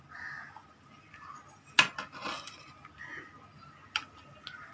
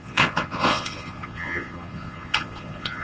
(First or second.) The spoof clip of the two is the second